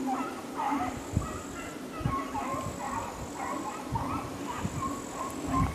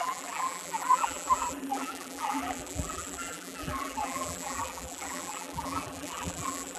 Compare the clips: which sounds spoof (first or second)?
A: second